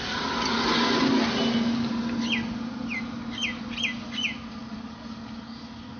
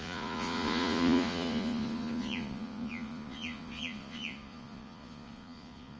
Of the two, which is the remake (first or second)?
second